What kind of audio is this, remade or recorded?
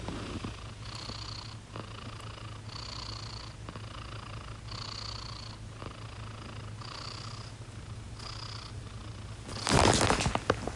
recorded